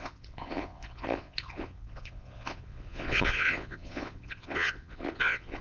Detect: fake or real fake